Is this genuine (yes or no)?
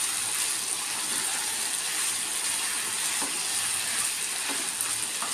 yes